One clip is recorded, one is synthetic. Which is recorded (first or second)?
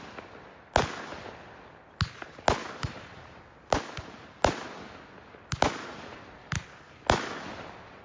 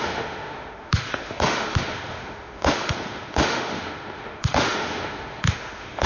first